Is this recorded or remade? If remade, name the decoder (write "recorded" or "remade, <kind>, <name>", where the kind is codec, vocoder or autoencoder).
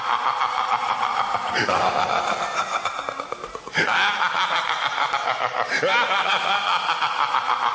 recorded